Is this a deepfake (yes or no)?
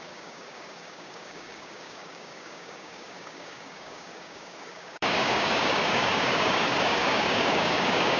yes